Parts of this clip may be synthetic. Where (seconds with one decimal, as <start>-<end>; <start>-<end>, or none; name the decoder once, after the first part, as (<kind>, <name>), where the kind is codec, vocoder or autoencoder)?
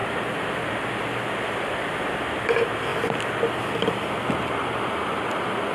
none